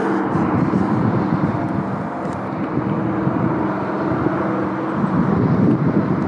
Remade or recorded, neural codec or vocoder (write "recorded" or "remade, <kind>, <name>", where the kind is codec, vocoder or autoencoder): recorded